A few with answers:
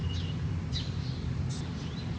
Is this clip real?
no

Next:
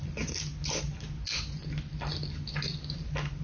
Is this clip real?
yes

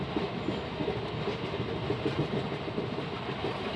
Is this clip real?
yes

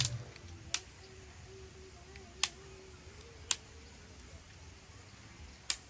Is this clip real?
yes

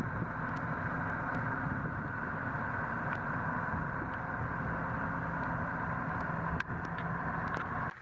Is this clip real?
yes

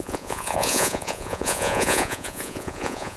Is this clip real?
no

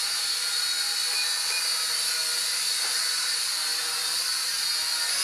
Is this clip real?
yes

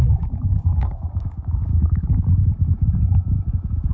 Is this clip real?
no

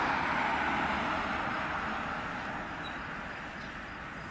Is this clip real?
yes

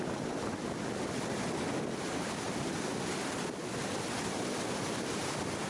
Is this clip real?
yes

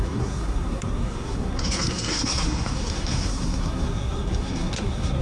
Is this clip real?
no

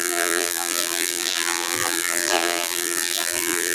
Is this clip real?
no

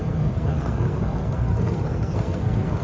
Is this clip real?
no